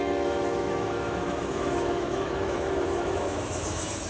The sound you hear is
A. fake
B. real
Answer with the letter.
A